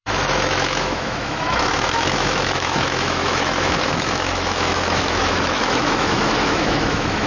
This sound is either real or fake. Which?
fake